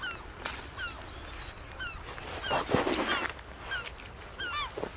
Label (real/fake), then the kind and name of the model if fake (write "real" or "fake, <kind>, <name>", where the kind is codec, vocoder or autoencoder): real